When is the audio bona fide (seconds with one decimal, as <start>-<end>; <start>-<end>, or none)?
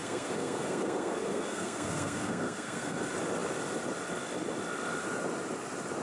3.0-6.0